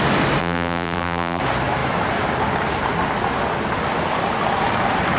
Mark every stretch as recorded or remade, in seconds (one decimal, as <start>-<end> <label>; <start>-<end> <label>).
0.0-0.4 recorded; 0.4-1.4 remade; 1.4-5.2 recorded